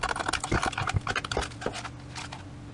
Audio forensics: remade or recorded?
recorded